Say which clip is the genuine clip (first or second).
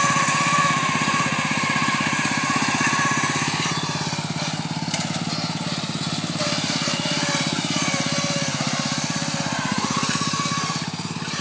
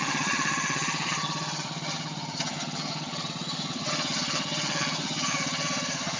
first